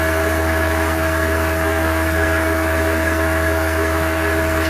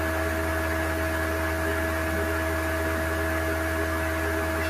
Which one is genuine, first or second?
second